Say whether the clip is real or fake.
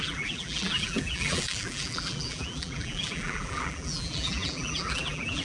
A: fake